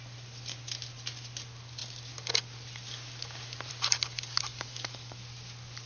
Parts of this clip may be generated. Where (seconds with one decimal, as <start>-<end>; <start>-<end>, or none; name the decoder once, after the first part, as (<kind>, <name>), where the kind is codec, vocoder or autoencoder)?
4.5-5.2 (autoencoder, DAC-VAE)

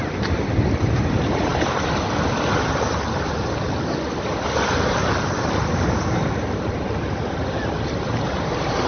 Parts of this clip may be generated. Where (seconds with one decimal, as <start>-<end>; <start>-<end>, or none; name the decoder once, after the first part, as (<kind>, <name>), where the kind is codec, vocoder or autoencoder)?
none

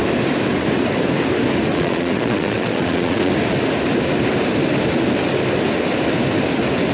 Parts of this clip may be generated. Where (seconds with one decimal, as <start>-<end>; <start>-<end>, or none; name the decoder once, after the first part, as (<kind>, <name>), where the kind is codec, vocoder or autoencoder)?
1.7-3.3 (vocoder, Vocos)

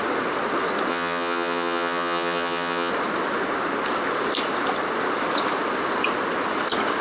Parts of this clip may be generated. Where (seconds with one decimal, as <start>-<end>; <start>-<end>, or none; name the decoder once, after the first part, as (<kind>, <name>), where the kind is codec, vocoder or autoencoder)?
0.9-2.9 (vocoder, HiFi-GAN)